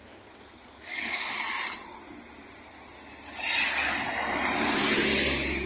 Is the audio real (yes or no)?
yes